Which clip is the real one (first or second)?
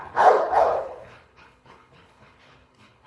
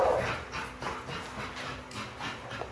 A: second